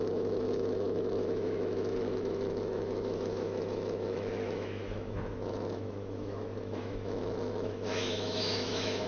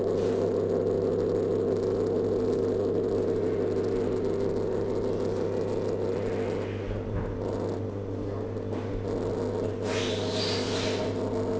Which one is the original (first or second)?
second